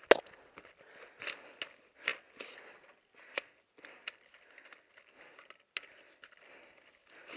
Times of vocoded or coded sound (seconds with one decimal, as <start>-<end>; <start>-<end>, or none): none